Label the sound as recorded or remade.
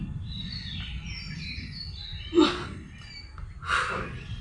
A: recorded